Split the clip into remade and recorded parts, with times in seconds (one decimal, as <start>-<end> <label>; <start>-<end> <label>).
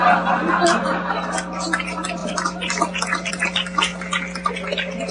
0.0-5.1 recorded